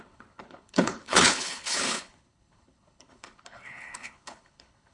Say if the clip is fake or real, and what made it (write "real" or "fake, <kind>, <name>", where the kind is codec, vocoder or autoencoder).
fake, codec, HILCodec